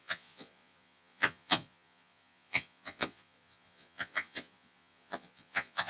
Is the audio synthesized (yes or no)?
yes